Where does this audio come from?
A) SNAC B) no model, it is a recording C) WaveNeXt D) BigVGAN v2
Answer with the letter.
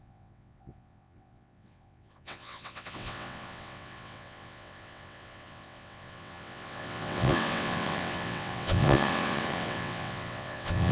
C